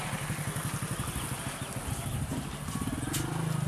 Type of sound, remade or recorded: recorded